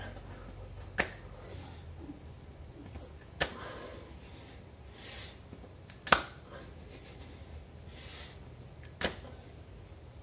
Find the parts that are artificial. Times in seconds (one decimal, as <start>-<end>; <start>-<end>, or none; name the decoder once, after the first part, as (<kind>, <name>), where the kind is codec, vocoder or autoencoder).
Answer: none